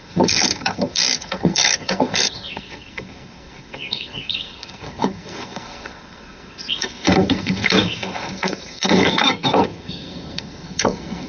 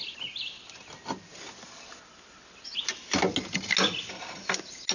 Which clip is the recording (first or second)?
second